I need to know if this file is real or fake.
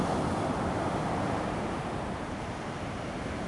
real